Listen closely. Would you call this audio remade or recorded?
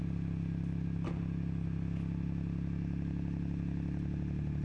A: recorded